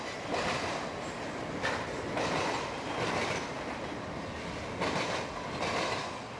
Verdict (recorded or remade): recorded